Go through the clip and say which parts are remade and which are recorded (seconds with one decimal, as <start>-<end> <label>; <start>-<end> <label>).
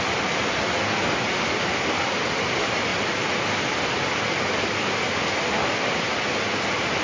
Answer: 0.0-7.0 recorded